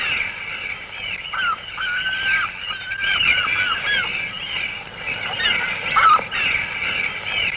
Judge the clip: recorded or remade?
recorded